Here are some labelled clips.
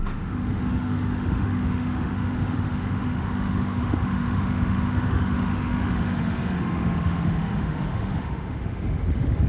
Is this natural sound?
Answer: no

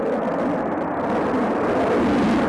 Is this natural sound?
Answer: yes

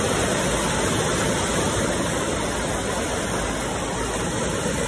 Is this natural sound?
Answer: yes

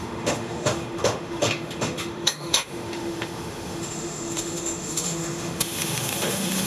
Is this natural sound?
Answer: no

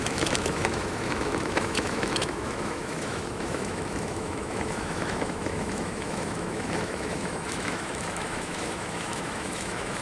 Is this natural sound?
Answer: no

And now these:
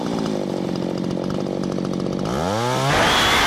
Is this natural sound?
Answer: yes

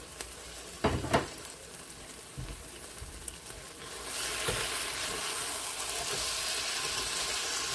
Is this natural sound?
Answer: yes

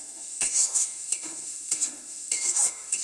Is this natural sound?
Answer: no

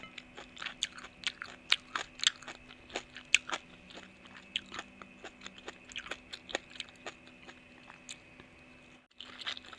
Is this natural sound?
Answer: yes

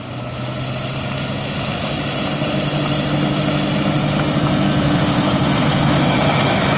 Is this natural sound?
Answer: yes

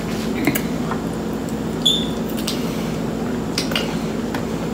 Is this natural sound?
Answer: yes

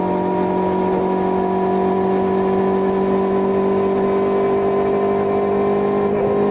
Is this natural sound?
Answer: yes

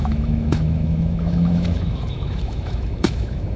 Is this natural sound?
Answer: no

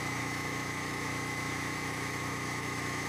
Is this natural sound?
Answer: no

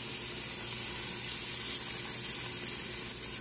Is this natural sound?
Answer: yes